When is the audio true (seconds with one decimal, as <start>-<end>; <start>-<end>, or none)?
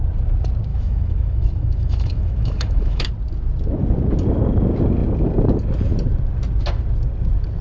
0.0-0.7; 3.1-7.6